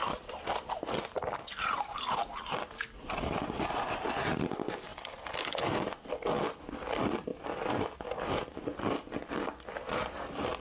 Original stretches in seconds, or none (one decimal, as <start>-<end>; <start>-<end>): 1.8-9.2